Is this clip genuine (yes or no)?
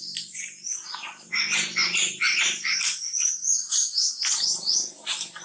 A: yes